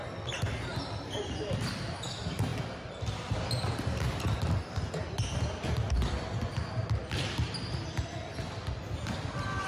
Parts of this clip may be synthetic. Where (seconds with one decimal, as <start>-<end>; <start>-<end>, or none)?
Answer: none